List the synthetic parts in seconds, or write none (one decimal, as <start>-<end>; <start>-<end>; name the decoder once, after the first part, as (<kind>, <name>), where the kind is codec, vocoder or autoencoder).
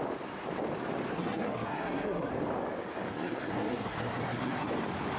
1.1-2.3 (codec, SNAC); 3.1-4.7